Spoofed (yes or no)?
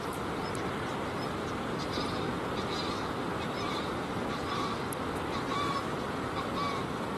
no